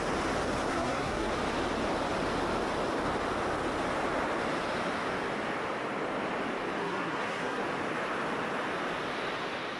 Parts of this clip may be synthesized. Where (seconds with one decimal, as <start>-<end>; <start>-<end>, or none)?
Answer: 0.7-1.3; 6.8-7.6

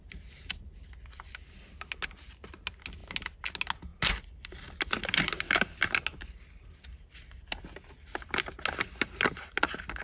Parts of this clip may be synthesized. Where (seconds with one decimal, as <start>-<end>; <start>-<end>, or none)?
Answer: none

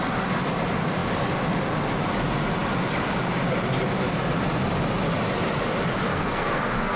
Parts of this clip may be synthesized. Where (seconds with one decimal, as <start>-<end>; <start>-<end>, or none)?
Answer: 6.1-7.0

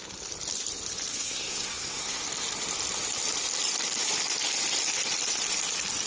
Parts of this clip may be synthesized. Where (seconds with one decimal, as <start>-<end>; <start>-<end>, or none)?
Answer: 1.1-2.2

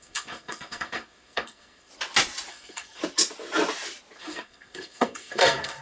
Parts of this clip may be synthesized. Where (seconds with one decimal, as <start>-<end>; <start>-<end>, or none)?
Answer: 0.0-1.9; 2.5-3.0; 4.2-5.8